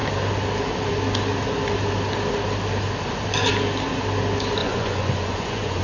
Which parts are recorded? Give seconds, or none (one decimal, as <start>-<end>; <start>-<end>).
0.0-4.6